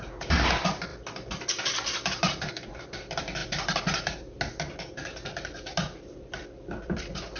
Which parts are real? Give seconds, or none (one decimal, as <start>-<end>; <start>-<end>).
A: 0.0-7.4